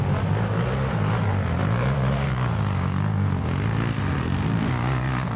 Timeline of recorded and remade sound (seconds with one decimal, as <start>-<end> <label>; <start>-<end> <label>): 0.0-1.6 recorded; 1.6-4.7 remade; 4.7-5.4 recorded